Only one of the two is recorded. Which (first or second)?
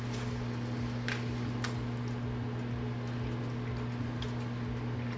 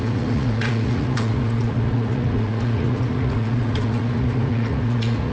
first